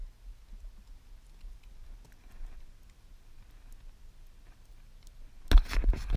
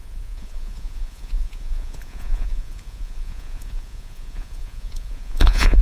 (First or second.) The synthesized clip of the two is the second